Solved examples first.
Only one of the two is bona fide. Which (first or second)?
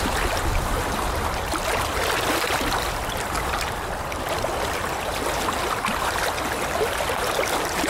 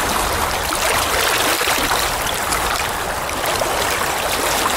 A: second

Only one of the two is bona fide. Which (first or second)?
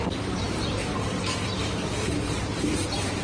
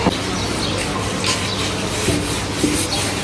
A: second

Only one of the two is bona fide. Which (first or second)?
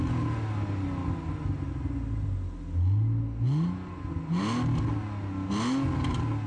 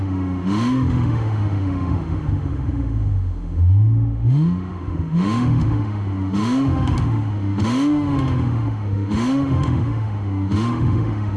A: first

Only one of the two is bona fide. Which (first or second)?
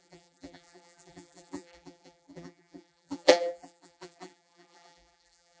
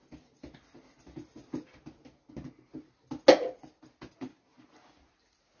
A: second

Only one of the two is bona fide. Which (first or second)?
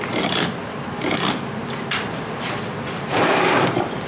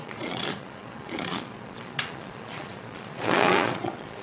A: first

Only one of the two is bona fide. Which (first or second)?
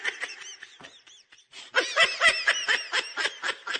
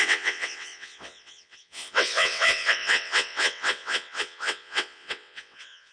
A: first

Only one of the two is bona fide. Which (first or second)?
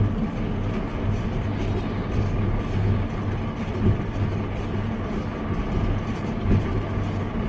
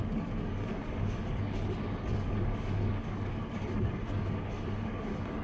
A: first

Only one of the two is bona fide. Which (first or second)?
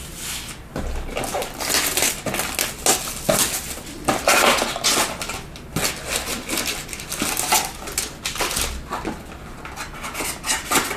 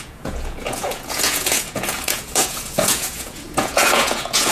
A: first